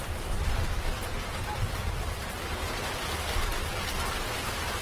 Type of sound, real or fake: real